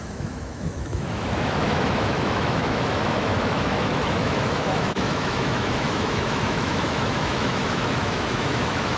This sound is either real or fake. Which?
fake